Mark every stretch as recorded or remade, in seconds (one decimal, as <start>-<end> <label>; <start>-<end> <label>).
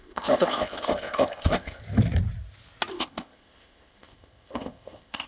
0.0-1.8 remade; 1.8-2.9 recorded; 2.9-5.3 remade